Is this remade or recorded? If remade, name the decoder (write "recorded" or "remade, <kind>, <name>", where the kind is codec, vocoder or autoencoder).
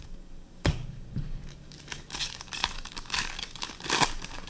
remade, codec, DAC